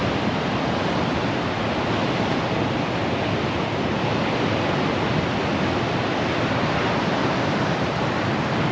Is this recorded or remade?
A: recorded